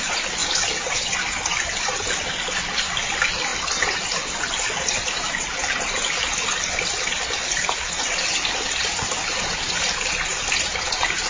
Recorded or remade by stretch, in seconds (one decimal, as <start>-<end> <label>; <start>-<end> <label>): 0.0-11.3 recorded